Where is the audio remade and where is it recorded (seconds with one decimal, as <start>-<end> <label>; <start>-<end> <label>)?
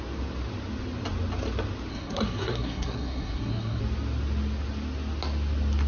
0.0-1.9 recorded; 1.9-3.8 remade; 3.8-5.9 recorded